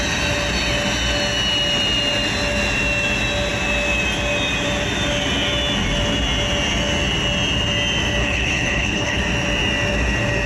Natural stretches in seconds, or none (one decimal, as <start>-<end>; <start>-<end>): 0.0-8.2; 9.2-10.5

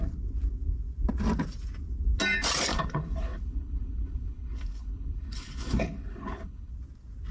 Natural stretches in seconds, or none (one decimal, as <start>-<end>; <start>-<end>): 0.0-2.7; 6.7-7.3

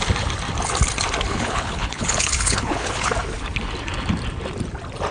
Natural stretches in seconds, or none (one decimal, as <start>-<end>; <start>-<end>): 0.0-1.3; 3.1-5.1

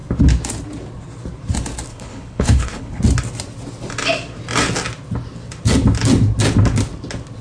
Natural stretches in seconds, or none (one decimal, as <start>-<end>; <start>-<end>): 0.0-1.9; 3.0-7.4

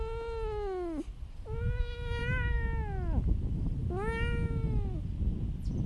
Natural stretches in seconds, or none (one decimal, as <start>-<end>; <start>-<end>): 0.0-5.9